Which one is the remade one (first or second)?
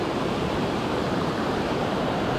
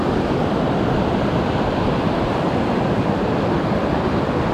first